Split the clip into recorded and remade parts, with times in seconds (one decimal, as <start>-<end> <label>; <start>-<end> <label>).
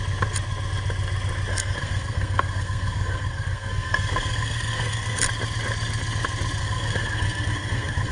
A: 0.0-1.5 recorded; 1.5-5.2 remade; 5.2-6.6 recorded; 6.6-8.1 remade